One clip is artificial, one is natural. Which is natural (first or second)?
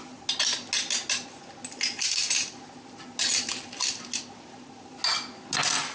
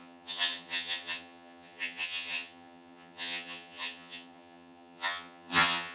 first